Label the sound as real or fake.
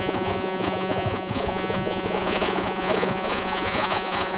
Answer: fake